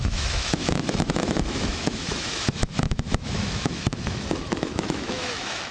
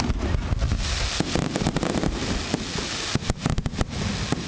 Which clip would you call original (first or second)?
second